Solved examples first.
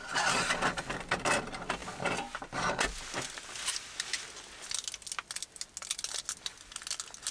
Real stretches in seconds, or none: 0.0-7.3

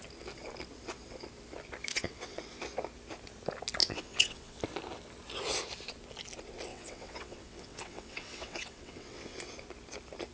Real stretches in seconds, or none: 0.0-1.9; 2.4-3.8; 4.6-6.7; 9.5-10.3

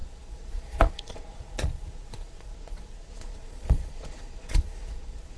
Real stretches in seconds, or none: none